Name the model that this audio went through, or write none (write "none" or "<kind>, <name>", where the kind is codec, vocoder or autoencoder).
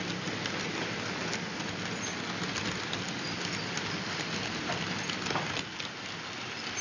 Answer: none